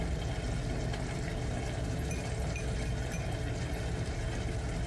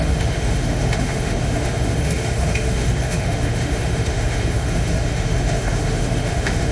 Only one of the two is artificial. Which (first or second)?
second